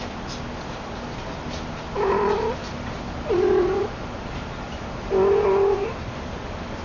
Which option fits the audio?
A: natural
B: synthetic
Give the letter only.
A